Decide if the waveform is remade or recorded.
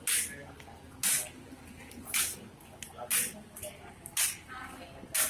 recorded